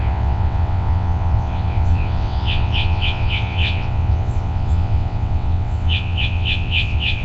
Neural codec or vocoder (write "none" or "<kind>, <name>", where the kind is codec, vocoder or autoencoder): vocoder, WaveNeXt